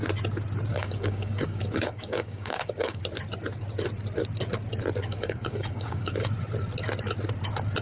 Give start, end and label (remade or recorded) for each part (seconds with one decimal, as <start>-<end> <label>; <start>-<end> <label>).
0.0-0.7 recorded; 0.7-3.0 remade; 3.0-5.0 recorded; 5.0-6.3 remade; 6.3-7.8 recorded